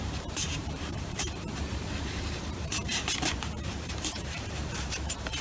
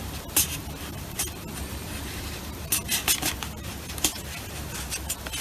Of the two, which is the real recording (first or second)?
second